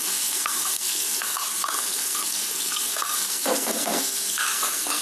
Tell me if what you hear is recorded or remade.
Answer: remade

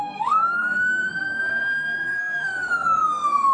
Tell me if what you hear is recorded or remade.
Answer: remade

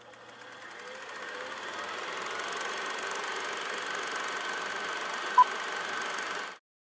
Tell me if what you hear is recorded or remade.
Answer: recorded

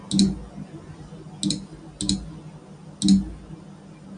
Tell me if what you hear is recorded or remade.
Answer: recorded